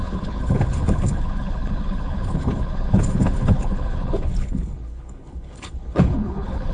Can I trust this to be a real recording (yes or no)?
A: no